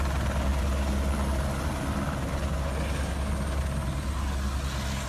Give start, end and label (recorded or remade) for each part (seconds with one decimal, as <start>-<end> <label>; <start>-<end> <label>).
0.0-5.1 recorded